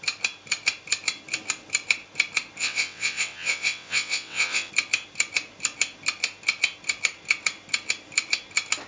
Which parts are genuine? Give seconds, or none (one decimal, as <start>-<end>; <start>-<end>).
0.0-2.6; 4.7-8.9